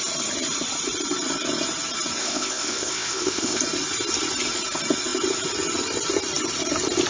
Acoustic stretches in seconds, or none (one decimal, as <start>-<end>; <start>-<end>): 0.0-2.2; 3.6-7.1